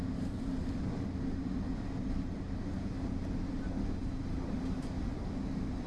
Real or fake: real